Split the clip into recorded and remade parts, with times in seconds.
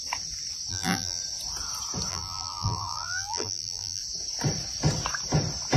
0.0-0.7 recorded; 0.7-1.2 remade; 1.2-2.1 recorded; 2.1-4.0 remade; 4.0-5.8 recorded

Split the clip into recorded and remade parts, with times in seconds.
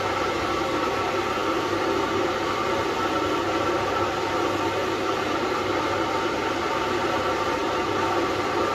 0.0-8.7 recorded